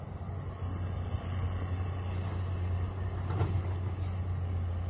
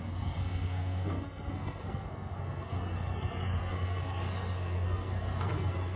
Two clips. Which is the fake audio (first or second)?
second